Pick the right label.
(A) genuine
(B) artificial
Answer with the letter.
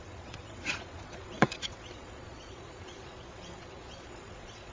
B